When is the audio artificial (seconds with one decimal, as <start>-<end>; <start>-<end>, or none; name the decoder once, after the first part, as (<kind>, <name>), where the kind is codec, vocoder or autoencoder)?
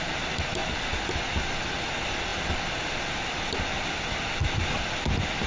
none